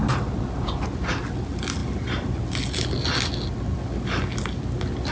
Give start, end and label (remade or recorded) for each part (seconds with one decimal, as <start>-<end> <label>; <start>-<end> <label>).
0.0-5.1 recorded